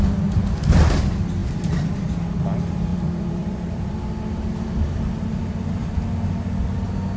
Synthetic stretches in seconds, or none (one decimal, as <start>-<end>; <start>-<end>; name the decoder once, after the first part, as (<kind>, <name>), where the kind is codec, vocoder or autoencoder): 1.4-2.0 (vocoder, BigVGAN v2); 2.9-4.0